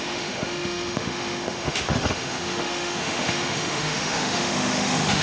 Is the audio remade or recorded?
remade